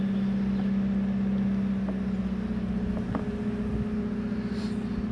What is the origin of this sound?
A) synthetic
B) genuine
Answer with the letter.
B